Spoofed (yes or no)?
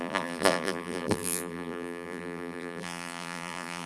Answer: yes